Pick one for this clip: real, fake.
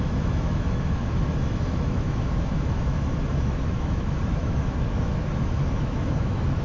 fake